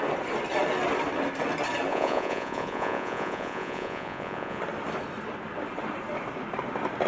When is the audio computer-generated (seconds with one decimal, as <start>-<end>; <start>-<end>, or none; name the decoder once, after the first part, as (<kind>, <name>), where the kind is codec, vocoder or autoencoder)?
1.9-4.6 (vocoder, Vocos)